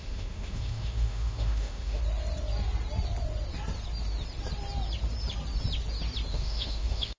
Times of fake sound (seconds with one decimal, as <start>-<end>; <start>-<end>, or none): 0.0-2.0; 6.3-7.2

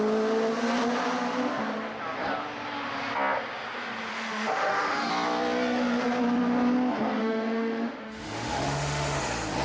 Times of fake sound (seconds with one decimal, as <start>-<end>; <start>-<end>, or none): 4.1-5.1; 7.2-9.2

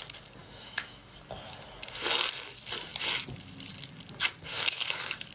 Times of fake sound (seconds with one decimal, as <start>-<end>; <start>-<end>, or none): 0.4-1.2; 4.5-5.3

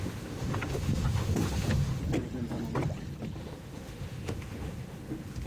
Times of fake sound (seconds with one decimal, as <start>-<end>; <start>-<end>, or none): 0.0-2.0; 3.4-5.5